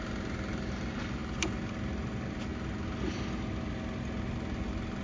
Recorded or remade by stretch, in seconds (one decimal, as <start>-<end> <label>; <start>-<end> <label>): 0.0-5.0 recorded